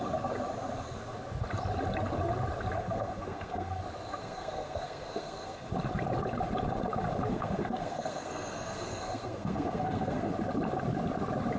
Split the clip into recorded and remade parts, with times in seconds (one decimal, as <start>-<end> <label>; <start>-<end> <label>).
0.0-2.8 recorded; 2.8-3.8 remade; 3.8-4.2 recorded; 4.2-5.7 remade; 5.7-7.3 recorded; 7.3-10.3 remade; 10.3-11.6 recorded